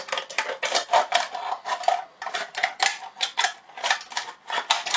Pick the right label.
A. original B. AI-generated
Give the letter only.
A